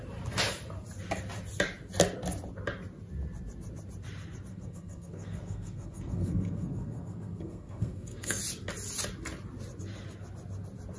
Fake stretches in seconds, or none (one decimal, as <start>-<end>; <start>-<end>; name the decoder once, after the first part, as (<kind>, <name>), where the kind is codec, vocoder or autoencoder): 4.5-8.4 (codec, SNAC)